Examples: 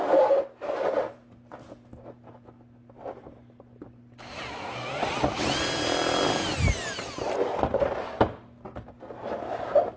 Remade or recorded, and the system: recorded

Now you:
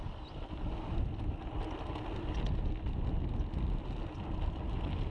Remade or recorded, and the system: recorded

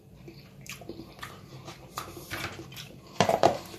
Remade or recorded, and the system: remade, vocoder, BigVGAN v2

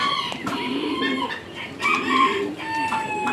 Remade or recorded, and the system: recorded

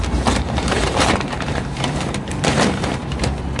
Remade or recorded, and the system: remade, vocoder, BigVGAN v2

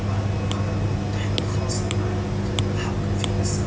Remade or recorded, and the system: recorded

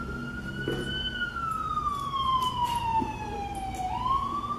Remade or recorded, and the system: recorded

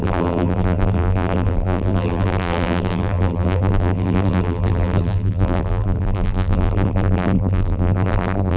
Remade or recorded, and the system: remade, vocoder, BigVGAN v2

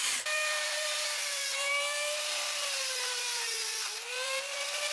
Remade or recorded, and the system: remade, vocoder, BigVGAN v2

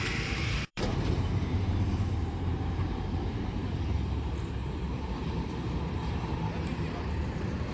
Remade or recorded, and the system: remade, vocoder, BigVGAN v2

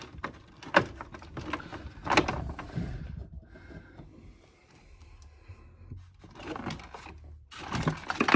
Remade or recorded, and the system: recorded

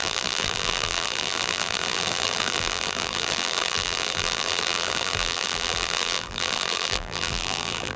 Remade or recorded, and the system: remade, vocoder, BigVGAN v2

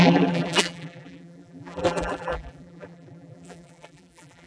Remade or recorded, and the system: remade, vocoder, BigVGAN v2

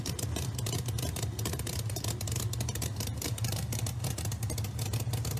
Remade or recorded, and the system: recorded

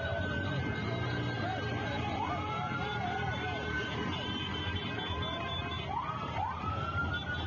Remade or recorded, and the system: remade, vocoder, BigVGAN v2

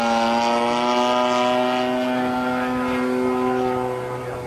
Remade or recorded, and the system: recorded